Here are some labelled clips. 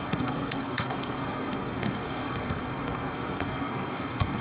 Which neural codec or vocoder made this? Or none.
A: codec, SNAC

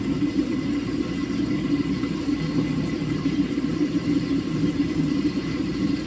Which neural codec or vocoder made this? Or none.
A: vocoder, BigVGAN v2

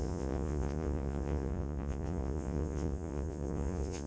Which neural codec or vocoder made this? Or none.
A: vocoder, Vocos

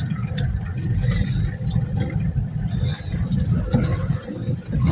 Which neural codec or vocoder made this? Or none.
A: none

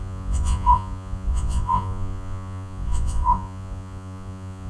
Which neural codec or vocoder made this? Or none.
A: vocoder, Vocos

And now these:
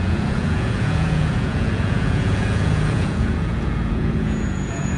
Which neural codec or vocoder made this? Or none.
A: vocoder, Vocos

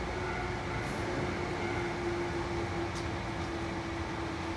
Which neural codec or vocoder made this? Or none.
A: none